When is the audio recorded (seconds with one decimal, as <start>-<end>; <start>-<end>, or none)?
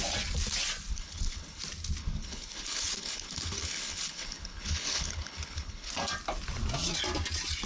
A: 0.0-0.9; 1.6-2.0; 5.9-7.7